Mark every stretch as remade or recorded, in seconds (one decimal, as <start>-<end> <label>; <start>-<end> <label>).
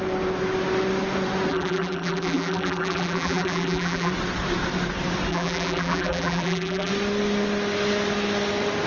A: 0.0-1.5 recorded; 1.5-4.1 remade; 4.1-5.3 recorded; 5.3-6.9 remade; 6.9-8.9 recorded